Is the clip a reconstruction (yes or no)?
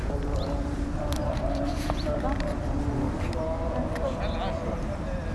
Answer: no